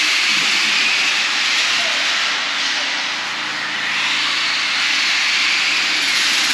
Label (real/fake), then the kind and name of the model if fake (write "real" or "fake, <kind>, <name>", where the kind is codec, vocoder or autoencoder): real